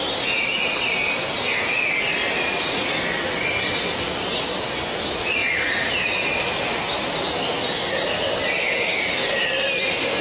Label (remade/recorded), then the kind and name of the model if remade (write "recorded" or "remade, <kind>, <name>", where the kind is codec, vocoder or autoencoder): recorded